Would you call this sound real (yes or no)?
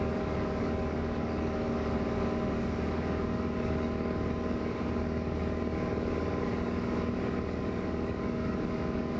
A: no